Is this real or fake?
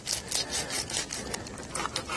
real